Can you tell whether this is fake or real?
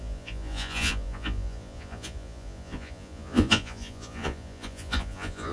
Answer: fake